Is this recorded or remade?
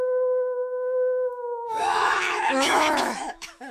remade